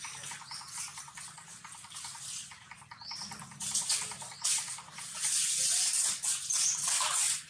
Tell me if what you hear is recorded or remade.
recorded